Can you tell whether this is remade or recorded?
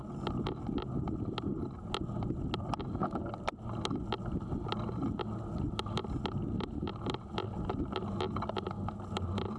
recorded